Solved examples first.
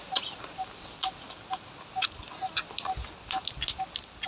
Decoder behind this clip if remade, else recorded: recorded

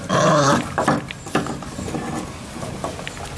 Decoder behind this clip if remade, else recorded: recorded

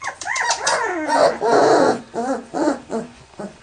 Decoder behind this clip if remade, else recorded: remade, vocoder, Vocos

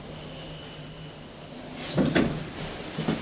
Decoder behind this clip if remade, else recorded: recorded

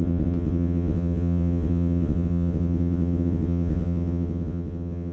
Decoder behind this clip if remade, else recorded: remade, vocoder, WaveNeXt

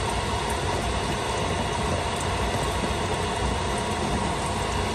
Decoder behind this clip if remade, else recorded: recorded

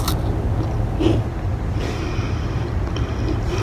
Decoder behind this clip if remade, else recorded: recorded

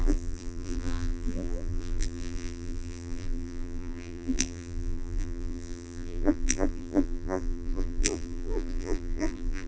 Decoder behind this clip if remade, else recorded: remade, vocoder, BigVGAN v2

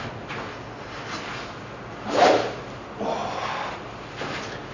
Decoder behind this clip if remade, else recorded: recorded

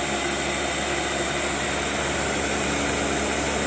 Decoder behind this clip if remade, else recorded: recorded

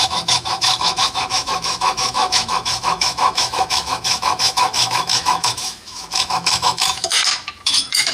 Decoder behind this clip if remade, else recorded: remade, autoencoder, DAC-VAE